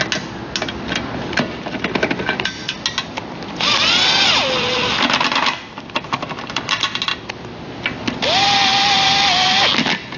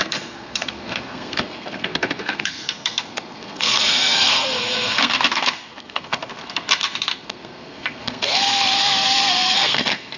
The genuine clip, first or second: first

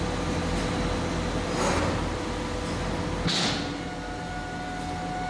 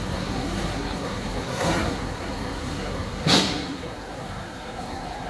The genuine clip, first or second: first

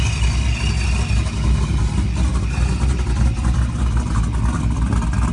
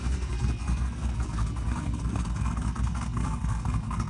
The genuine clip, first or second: first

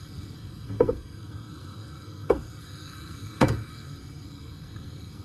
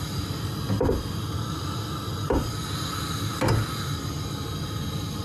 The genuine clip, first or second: second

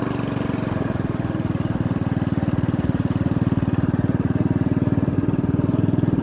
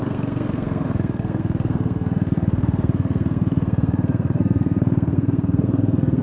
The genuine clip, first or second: first